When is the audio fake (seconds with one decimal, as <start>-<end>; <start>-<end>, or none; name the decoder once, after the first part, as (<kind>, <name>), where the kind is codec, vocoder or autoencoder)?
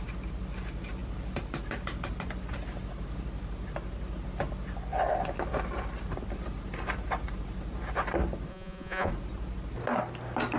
8.5-9.1 (vocoder, Vocos)